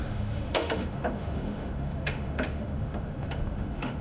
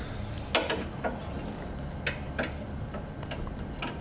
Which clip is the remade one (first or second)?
first